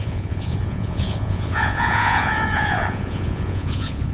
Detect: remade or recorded remade